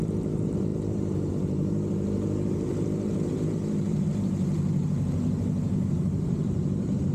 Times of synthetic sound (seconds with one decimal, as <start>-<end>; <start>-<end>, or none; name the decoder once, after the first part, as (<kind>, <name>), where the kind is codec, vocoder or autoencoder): 0.0-7.1 (vocoder, BigVGAN v2)